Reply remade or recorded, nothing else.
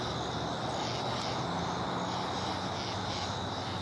recorded